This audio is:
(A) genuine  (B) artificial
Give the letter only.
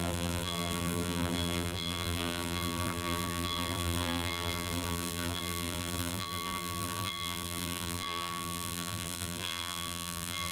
B